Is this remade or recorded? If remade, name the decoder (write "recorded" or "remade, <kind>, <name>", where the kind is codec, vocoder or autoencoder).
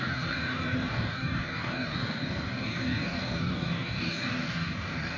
remade, codec, DAC